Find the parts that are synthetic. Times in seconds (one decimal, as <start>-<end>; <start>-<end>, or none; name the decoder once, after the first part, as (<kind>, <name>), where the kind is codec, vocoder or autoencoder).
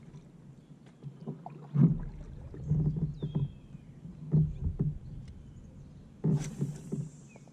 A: 0.0-1.2 (vocoder, BigVGAN v2); 3.6-7.5